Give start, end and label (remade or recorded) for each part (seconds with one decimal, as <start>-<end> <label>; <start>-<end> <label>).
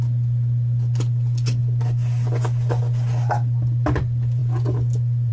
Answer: 0.0-5.3 recorded